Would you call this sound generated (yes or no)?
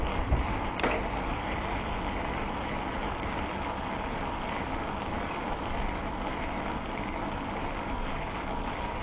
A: yes